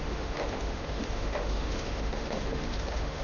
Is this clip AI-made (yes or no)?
yes